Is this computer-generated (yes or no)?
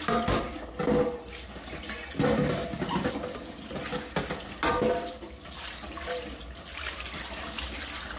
no